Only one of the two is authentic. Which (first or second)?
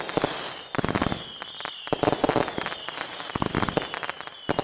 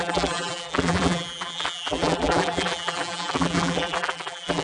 first